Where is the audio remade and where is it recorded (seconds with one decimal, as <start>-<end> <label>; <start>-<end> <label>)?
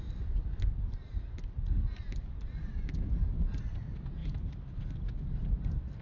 0.0-6.0 recorded